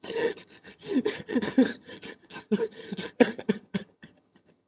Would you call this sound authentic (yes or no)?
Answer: no